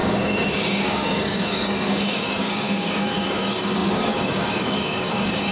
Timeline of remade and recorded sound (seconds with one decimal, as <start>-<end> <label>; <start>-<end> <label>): 0.0-5.5 remade